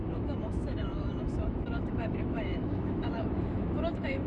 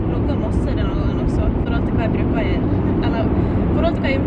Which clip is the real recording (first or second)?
second